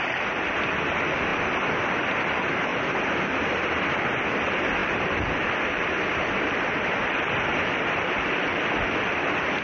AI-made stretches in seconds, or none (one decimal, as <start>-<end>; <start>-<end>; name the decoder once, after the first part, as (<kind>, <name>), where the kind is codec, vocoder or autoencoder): 0.0-9.6 (vocoder, BigVGAN v2)